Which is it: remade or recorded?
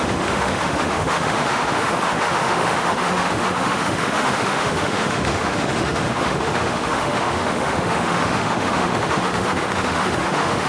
remade